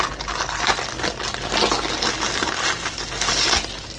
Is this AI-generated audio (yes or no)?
no